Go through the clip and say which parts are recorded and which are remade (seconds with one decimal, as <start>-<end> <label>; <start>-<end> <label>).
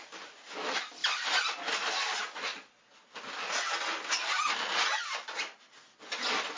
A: 0.0-6.6 recorded